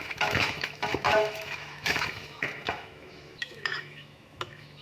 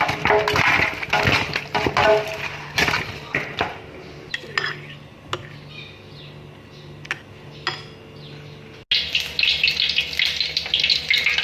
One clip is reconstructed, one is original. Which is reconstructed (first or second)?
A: first